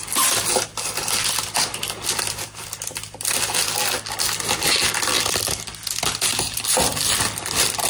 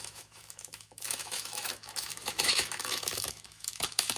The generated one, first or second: second